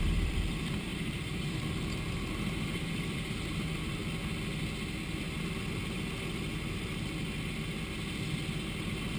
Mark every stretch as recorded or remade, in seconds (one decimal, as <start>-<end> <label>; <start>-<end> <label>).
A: 0.0-4.0 remade; 4.0-9.2 recorded